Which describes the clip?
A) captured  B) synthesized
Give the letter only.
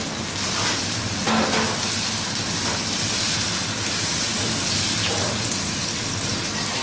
A